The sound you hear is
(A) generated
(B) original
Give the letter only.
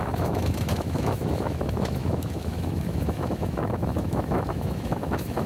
A